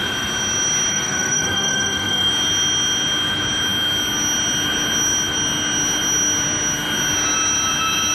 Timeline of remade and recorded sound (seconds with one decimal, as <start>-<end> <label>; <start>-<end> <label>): 0.0-0.9 recorded; 0.9-2.3 remade; 2.3-8.1 recorded